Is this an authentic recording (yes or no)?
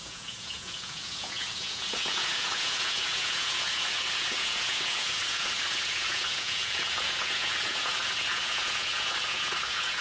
no